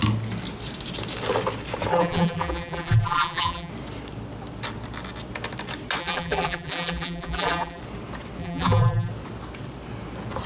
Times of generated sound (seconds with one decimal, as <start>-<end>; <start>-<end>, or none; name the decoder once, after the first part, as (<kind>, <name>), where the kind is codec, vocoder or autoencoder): 1.9-3.7 (vocoder, BigVGAN v2); 6.0-7.8; 8.4-9.1